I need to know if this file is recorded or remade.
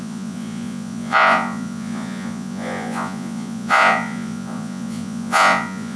remade